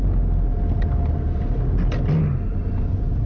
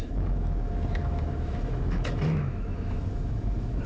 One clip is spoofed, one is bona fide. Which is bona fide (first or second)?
first